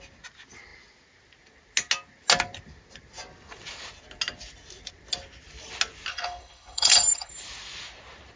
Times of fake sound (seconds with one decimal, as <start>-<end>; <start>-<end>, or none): 6.1-7.3